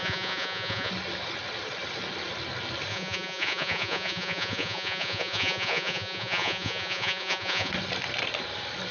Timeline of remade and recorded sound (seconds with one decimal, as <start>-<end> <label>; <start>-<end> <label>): 0.0-0.9 remade; 0.9-2.9 recorded; 2.9-7.7 remade; 7.7-8.9 recorded